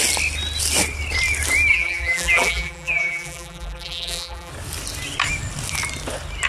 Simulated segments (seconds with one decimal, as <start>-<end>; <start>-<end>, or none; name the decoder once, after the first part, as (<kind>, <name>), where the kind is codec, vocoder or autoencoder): 1.7-4.5 (vocoder, BigVGAN v2)